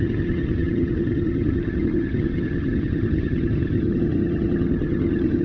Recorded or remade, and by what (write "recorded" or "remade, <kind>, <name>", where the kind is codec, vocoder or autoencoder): remade, vocoder, HiFi-GAN